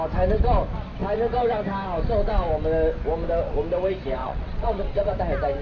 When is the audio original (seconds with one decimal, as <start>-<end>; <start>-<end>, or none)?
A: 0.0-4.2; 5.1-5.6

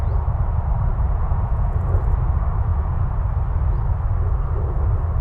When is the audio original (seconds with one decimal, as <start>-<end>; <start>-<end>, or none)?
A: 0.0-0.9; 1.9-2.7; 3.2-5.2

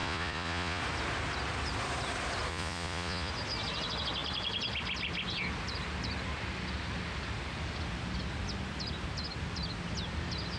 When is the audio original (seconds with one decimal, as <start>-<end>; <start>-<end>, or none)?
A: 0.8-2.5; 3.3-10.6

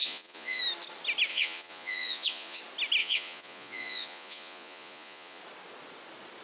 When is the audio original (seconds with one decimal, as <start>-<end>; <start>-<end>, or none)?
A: 0.6-1.3; 2.6-3.0; 5.4-6.4